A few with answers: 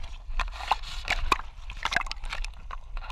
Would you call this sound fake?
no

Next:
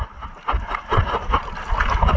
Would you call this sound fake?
no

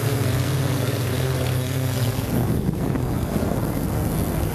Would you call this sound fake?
yes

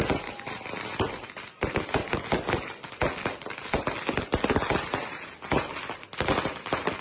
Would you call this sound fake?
no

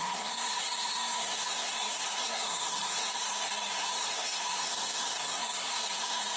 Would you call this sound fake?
yes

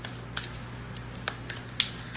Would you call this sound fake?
no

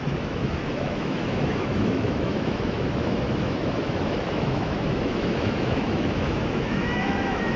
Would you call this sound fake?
yes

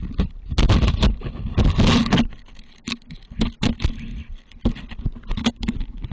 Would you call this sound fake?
no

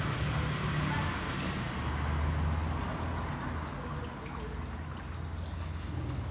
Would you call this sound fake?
no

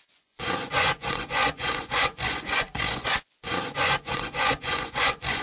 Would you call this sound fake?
yes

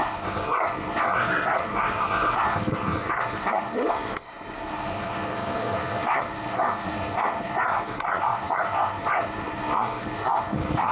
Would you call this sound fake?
yes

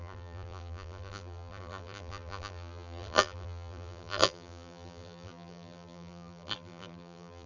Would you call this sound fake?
yes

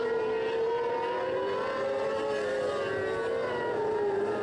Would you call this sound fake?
no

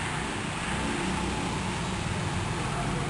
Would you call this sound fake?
no